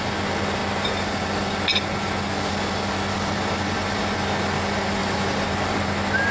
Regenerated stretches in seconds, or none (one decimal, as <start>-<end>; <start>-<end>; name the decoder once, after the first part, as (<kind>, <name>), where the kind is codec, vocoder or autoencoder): 5.0-5.8 (vocoder, BigVGAN v2)

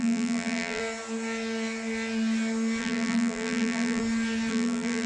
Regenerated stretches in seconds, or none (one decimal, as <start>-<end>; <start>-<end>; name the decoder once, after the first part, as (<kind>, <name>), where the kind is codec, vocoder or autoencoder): 0.0-0.8 (vocoder, BigVGAN v2); 2.8-4.0; 4.5-5.1

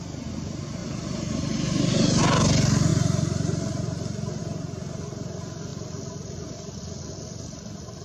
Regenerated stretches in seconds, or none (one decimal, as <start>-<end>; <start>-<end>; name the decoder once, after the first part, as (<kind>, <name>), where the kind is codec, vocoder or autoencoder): 0.8-2.2 (vocoder, BigVGAN v2)